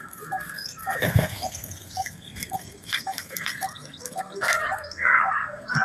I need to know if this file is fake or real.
fake